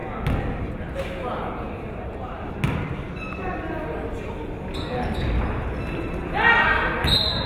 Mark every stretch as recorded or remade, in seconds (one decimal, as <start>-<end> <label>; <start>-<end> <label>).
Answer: 0.0-7.5 recorded